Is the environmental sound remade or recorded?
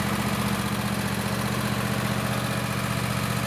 recorded